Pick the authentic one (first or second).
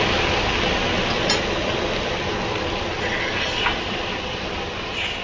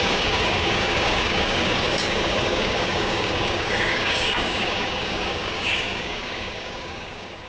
first